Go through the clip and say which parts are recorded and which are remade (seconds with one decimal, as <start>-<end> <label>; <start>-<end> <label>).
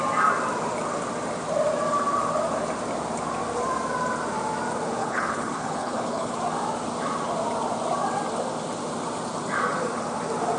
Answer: 0.0-5.0 recorded; 5.0-6.4 remade; 6.4-10.6 recorded